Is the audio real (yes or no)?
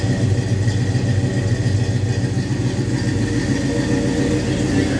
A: yes